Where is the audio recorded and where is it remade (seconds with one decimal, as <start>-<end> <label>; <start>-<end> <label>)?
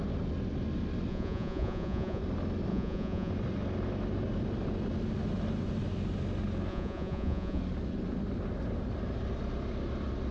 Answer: 0.0-1.1 recorded; 1.1-2.2 remade; 2.2-2.7 recorded; 2.7-3.3 remade; 3.3-6.7 recorded; 6.7-7.6 remade; 7.6-10.3 recorded